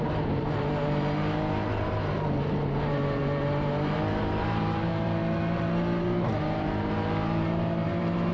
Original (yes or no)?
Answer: no